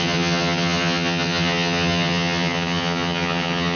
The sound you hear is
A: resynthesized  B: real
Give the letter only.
A